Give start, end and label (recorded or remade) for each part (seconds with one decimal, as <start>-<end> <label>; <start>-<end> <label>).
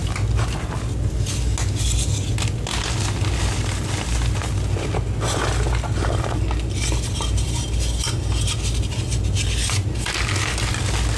0.0-11.2 recorded